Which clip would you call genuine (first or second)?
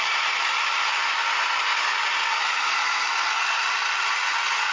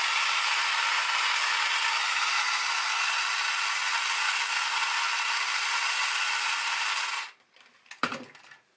second